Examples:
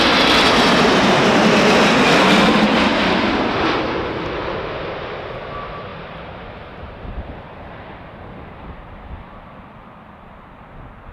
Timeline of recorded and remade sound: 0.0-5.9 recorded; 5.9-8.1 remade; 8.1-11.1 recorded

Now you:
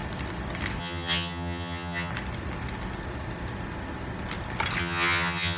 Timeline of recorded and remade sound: 0.0-0.8 recorded; 0.8-2.1 remade; 2.1-4.8 recorded; 4.8-5.6 remade

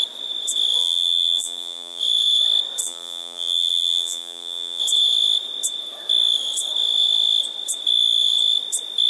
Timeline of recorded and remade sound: 0.0-0.8 recorded; 0.8-2.0 remade; 2.0-2.8 recorded; 2.8-4.8 remade; 4.8-9.1 recorded

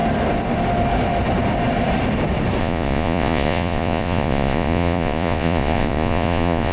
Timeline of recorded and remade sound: 0.0-2.6 recorded; 2.6-6.7 remade